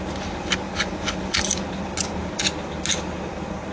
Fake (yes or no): no